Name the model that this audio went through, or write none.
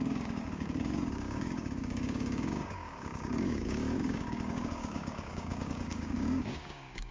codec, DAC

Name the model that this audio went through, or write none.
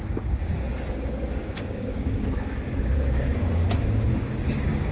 codec, DAC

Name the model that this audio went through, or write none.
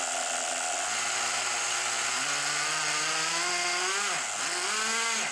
none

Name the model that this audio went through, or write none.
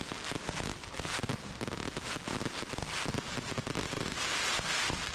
none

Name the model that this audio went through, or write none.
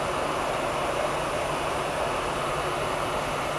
none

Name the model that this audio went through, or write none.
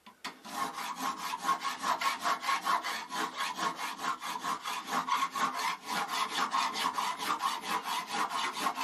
none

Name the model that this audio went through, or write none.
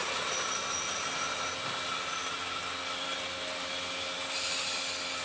none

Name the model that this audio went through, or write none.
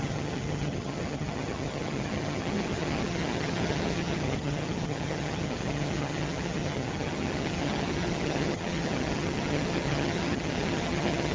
vocoder, HiFi-GAN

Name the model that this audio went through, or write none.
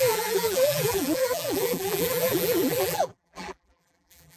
vocoder, BigVGAN v2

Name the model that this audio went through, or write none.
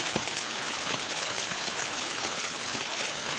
codec, HILCodec